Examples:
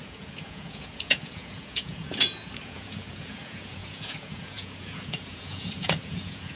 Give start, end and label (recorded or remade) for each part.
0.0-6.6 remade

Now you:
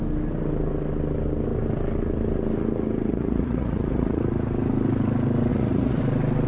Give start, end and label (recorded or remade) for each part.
0.0-3.1 recorded; 3.1-4.2 remade; 4.2-5.5 recorded; 5.5-6.0 remade; 6.0-6.5 recorded

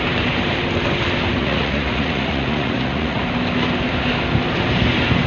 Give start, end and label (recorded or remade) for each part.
0.0-1.4 recorded; 1.4-3.2 remade; 3.2-5.3 recorded

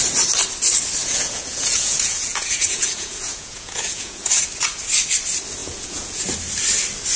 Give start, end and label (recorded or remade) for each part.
0.0-1.0 recorded; 1.0-4.4 remade; 4.4-5.6 recorded; 5.6-6.2 remade; 6.2-7.2 recorded

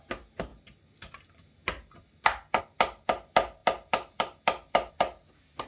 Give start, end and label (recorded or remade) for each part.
0.0-5.7 recorded

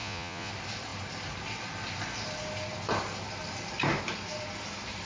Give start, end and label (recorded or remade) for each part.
0.0-0.5 remade; 0.5-5.1 recorded

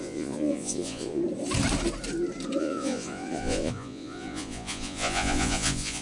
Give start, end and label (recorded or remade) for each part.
0.0-1.2 remade; 1.2-2.6 recorded; 2.6-6.0 remade

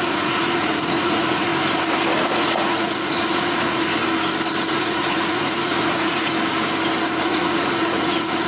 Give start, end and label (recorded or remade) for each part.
0.0-1.5 remade; 1.5-2.2 recorded; 2.2-4.0 remade; 4.0-4.7 recorded; 4.7-6.3 remade; 6.3-7.2 recorded; 7.2-8.5 remade